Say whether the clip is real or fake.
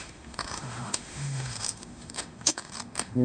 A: fake